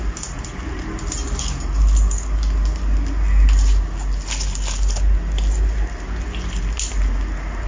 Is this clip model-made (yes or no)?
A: no